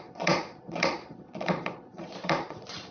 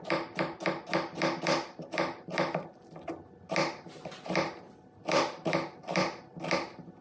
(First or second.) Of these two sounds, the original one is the second